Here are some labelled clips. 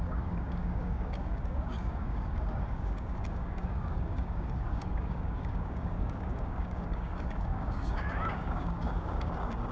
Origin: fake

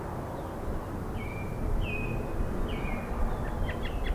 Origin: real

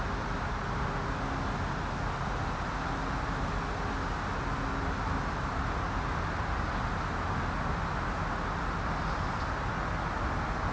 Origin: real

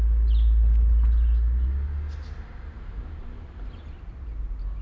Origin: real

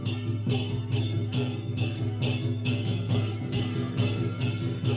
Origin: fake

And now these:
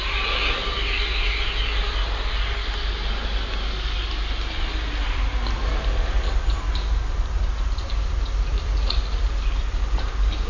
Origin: real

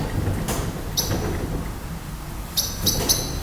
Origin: real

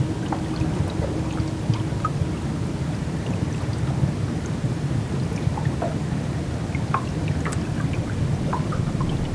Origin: real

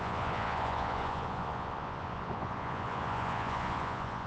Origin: fake